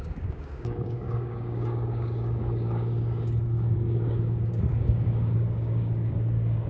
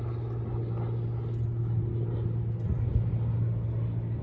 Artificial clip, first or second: first